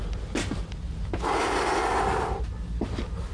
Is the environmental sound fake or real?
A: real